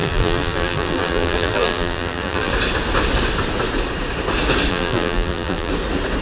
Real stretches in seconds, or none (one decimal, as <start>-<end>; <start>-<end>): 2.5-4.7; 5.7-6.2